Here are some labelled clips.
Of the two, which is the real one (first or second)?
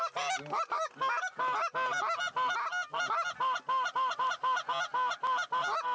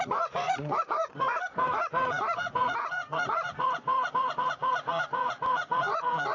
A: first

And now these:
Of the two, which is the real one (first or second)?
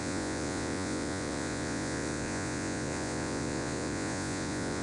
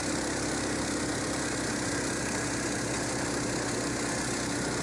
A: second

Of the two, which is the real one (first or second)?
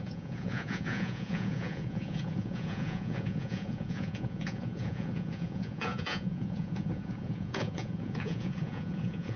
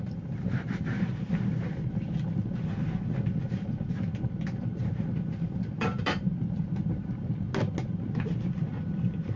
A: second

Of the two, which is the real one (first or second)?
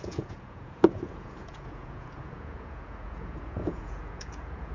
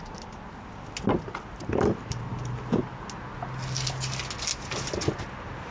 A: second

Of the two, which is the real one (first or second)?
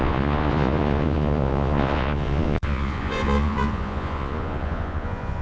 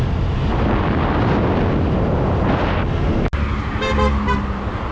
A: second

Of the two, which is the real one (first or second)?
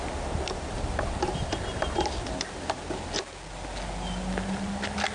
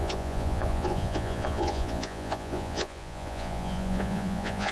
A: first